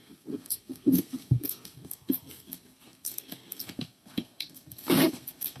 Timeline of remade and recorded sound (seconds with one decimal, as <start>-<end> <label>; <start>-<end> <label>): 0.0-5.6 remade